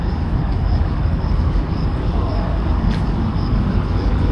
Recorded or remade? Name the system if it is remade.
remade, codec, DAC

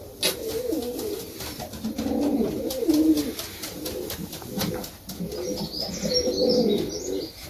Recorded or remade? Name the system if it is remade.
recorded